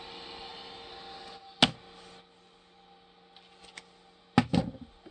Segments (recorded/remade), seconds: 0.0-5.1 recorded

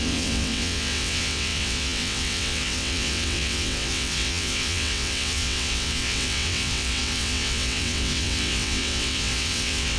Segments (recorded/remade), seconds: 0.0-10.0 remade

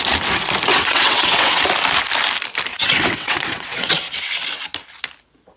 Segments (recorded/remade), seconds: 0.0-0.7 recorded; 0.7-1.6 remade; 1.6-2.7 recorded; 2.7-3.9 remade; 3.9-5.6 recorded

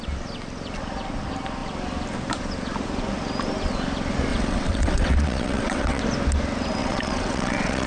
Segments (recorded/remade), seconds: 0.0-4.3 recorded; 4.3-6.0 remade; 6.0-6.8 recorded; 6.8-7.9 remade

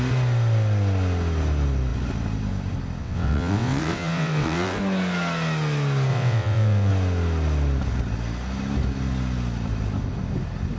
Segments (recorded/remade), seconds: 0.0-3.0 recorded; 3.0-4.8 remade; 4.8-6.1 recorded; 6.1-6.9 remade; 6.9-10.8 recorded